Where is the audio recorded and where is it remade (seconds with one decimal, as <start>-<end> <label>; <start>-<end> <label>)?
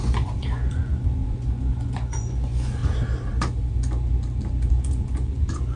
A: 0.0-2.8 remade; 2.8-4.7 recorded; 4.7-5.8 remade